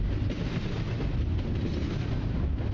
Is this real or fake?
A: real